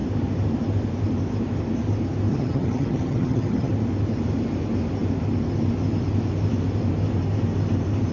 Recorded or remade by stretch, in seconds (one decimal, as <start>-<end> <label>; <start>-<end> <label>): 0.0-2.3 recorded; 2.3-3.7 remade; 3.7-8.1 recorded